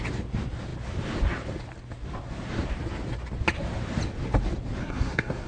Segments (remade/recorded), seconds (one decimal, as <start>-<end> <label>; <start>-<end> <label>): 0.0-4.8 recorded; 4.8-5.5 remade